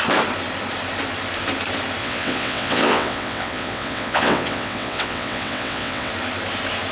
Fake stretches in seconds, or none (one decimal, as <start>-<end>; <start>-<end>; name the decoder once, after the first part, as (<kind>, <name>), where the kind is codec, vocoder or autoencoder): 2.0-6.1 (vocoder, WaveNeXt)